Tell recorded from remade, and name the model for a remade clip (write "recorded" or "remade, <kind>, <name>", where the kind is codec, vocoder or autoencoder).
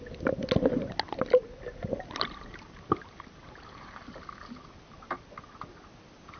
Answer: recorded